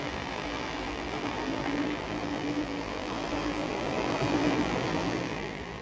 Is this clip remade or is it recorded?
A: remade